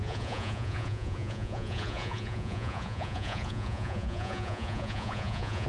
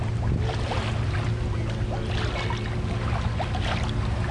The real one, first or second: second